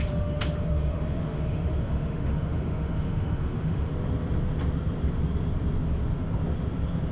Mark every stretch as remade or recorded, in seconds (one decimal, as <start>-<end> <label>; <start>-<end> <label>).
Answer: 0.0-3.9 remade; 3.9-7.1 recorded